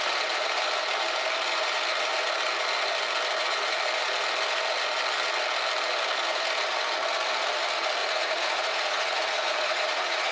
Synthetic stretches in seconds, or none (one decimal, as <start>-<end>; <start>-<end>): 8.0-10.3